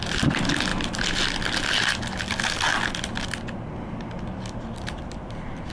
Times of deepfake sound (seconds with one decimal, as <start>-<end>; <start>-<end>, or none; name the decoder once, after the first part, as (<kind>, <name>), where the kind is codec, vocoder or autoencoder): none